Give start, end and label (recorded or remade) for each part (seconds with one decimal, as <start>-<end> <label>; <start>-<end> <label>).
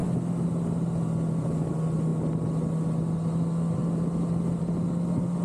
0.0-5.4 recorded